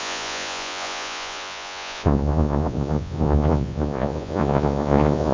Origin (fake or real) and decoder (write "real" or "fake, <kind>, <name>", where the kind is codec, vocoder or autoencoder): fake, vocoder, Vocos